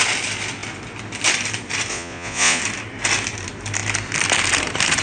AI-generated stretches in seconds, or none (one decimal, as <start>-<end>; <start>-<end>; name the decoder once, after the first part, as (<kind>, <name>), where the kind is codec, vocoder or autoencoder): 1.9-2.6 (vocoder, Vocos)